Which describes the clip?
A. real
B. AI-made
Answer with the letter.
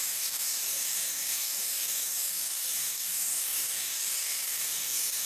B